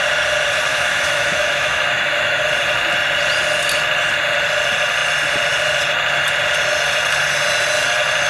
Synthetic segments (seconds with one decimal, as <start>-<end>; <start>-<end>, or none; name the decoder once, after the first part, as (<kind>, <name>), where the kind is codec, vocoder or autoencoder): 0.7-2.4 (autoencoder, DAC-VAE)